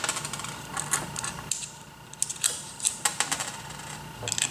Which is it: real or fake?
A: real